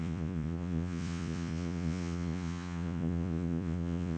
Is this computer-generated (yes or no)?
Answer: yes